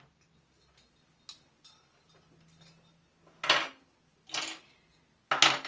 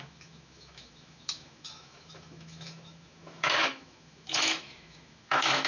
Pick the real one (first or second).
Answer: first